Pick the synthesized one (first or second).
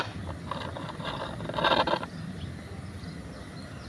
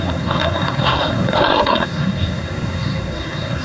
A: second